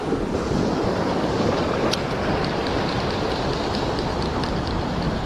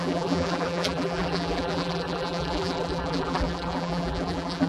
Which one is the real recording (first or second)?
first